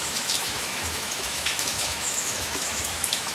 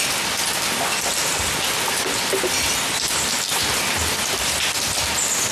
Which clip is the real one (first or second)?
second